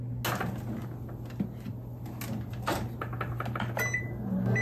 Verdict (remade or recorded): recorded